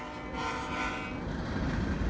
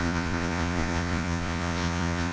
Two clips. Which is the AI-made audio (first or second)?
second